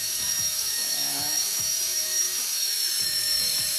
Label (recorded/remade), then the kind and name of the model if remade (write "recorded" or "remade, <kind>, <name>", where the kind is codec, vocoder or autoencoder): remade, autoencoder, DAC-VAE